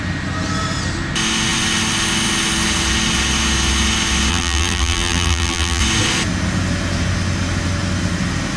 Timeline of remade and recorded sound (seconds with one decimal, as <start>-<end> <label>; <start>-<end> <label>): 0.0-4.3 recorded; 4.3-5.8 remade; 5.8-8.6 recorded